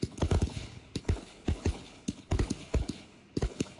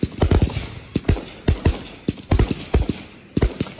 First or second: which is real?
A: second